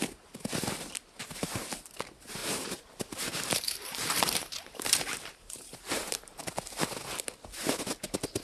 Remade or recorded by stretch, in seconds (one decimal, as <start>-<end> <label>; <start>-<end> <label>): 0.0-2.4 recorded; 2.4-6.5 remade; 6.5-8.4 recorded